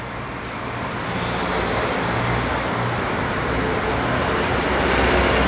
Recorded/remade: recorded